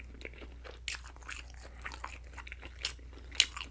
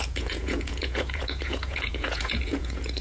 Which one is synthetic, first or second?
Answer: second